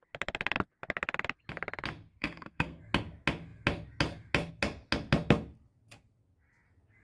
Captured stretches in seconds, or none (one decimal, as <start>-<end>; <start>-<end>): 0.0-2.2; 2.8-7.0